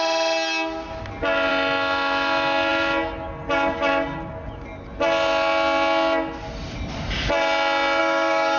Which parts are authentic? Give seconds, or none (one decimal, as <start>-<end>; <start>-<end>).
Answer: 0.0-8.0